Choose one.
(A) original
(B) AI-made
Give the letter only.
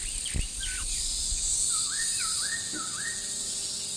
A